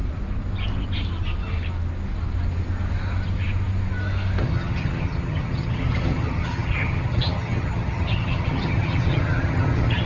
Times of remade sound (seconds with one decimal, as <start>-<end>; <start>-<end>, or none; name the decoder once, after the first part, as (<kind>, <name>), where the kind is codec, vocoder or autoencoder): 4.4-10.1 (vocoder, HiFi-GAN)